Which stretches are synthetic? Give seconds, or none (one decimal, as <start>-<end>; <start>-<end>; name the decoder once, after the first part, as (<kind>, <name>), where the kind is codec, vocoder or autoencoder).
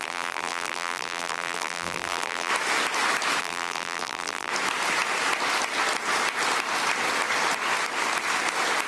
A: 0.0-2.5 (vocoder, BigVGAN v2); 3.4-4.5